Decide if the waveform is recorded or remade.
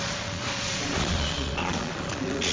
remade